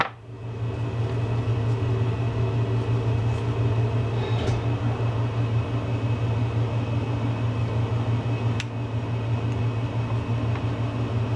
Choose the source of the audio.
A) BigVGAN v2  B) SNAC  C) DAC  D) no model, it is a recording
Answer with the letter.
D